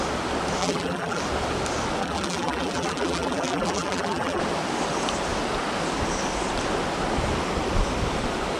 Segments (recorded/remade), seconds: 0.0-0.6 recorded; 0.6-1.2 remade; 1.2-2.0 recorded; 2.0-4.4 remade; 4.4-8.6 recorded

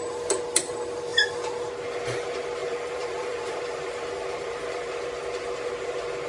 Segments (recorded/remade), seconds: 0.0-2.6 recorded; 2.6-4.9 remade; 4.9-6.3 recorded